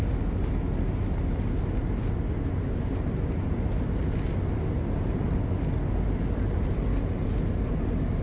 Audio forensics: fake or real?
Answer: real